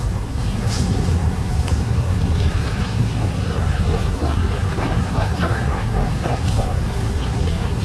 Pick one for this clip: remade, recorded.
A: remade